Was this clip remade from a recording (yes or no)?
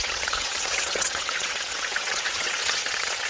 yes